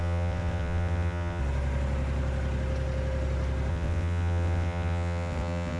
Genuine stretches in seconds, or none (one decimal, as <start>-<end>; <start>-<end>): 1.4-3.7